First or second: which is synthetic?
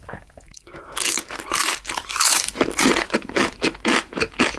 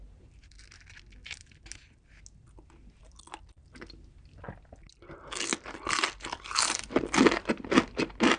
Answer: first